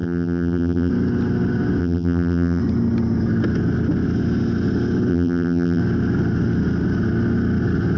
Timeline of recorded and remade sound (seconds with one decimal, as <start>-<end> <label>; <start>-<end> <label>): 0.0-0.9 remade; 0.9-1.8 recorded; 1.8-2.6 remade; 2.6-5.1 recorded; 5.1-5.8 remade; 5.8-8.0 recorded